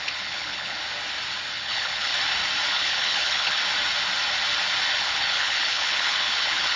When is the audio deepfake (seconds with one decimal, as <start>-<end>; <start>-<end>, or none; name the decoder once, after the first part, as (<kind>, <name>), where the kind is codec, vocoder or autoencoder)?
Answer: 0.0-0.8 (codec, HILCodec); 1.5-2.1; 2.7-3.6; 5.0-6.8